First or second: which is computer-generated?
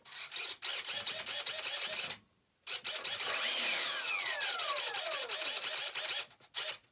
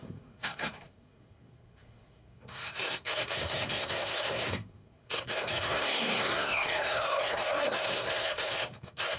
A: second